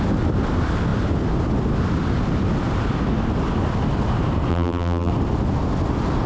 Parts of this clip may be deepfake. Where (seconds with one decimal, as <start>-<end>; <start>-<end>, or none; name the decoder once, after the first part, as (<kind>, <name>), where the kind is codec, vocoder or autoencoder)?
4.5-5.1 (vocoder, BigVGAN v2)